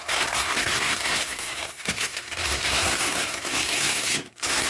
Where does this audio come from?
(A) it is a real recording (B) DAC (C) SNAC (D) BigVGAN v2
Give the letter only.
C